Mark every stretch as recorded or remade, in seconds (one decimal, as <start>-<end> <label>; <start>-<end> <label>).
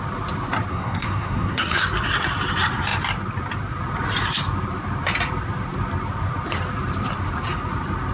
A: 0.0-0.7 recorded; 0.7-1.8 remade; 1.8-8.1 recorded